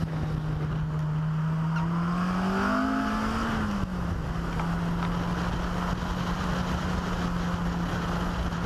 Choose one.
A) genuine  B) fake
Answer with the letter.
A